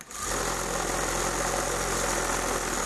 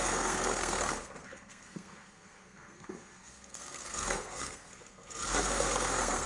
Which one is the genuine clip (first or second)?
first